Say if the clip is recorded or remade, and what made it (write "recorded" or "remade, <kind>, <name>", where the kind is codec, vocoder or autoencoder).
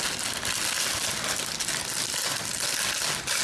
recorded